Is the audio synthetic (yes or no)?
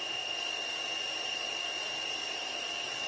no